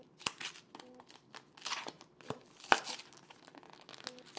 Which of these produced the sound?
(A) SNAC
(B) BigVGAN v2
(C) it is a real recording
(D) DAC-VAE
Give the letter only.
C